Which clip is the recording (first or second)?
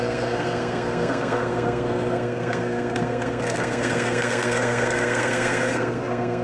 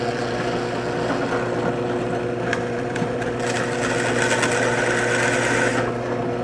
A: second